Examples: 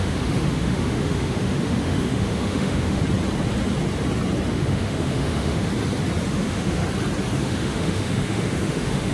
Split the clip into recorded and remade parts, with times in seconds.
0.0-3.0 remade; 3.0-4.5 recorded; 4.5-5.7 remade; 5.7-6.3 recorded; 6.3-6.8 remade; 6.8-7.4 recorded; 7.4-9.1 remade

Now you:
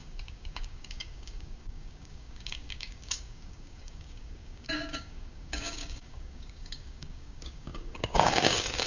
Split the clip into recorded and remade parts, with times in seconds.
0.0-8.9 remade

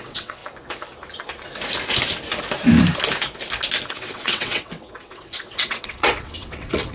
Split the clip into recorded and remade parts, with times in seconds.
0.0-0.4 remade; 0.4-3.9 recorded; 3.9-6.9 remade

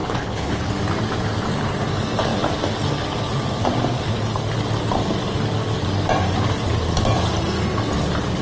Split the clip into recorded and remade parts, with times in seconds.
0.0-0.7 remade; 0.7-8.4 recorded

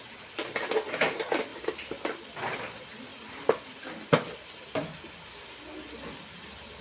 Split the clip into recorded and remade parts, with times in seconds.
0.0-6.8 recorded

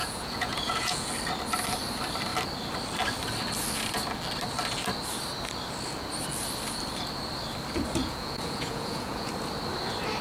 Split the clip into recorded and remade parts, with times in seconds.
0.0-1.1 remade; 1.1-8.0 recorded; 8.0-9.3 remade; 9.3-10.2 recorded

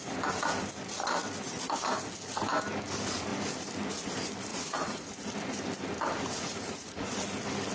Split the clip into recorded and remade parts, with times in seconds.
0.0-4.5 recorded; 4.5-5.1 remade; 5.1-6.3 recorded; 6.3-7.1 remade; 7.1-7.7 recorded